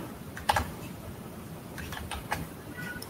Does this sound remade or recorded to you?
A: remade